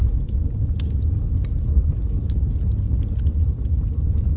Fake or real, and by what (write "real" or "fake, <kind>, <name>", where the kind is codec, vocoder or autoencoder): real